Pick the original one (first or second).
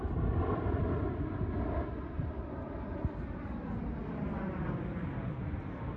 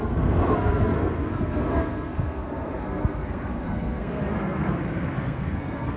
first